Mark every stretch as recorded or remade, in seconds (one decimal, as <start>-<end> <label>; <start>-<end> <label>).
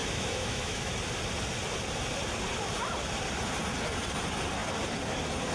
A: 0.0-0.9 remade; 0.9-5.5 recorded